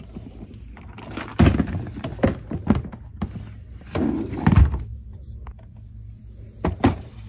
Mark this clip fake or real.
real